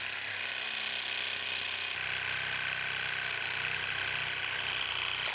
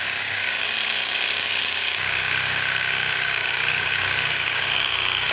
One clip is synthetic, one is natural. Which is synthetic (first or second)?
second